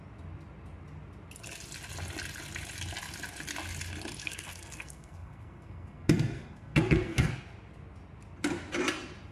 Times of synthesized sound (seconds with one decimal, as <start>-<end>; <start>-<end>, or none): 4.2-7.3